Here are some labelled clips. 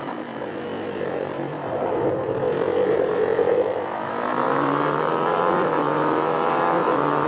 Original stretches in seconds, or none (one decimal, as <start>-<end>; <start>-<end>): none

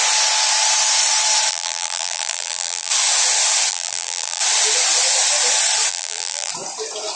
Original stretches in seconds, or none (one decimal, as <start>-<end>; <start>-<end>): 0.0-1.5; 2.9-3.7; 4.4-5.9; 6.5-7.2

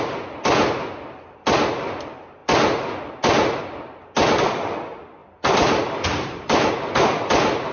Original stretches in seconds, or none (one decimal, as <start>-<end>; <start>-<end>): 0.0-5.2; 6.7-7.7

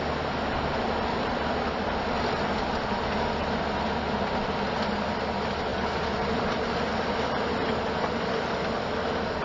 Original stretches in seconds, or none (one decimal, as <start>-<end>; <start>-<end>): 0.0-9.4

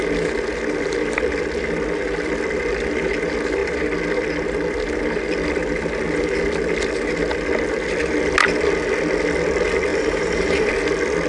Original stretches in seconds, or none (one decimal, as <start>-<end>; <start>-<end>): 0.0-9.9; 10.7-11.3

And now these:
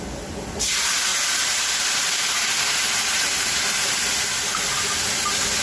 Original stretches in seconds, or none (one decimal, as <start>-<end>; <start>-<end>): 0.0-5.6

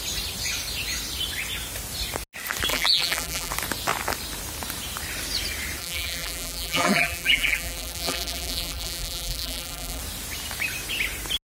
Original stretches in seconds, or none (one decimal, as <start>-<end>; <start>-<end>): 0.0-2.7; 3.5-5.8; 10.0-11.4

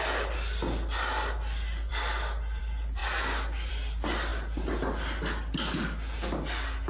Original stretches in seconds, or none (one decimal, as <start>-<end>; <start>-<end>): 0.0-6.9